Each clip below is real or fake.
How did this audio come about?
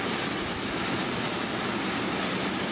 real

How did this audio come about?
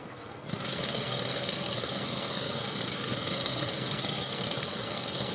fake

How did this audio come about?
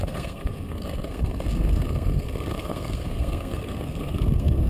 fake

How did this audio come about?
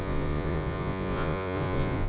fake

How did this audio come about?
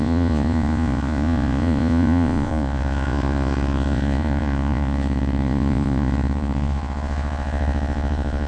fake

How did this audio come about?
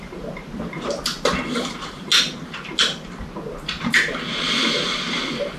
real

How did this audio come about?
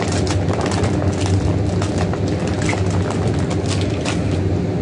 real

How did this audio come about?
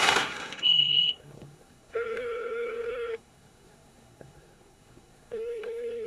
fake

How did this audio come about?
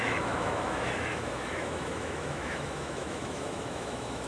fake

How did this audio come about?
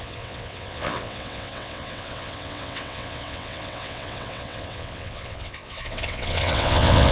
fake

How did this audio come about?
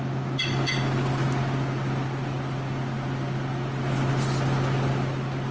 real